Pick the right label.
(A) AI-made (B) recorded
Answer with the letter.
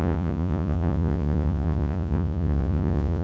A